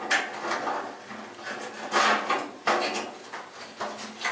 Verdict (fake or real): real